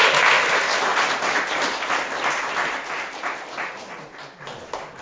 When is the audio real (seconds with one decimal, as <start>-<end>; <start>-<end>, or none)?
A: 0.0-5.0